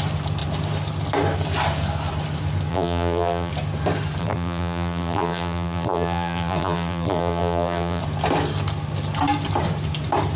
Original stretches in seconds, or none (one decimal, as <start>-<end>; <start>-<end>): 0.0-2.7; 3.5-4.2; 8.0-10.4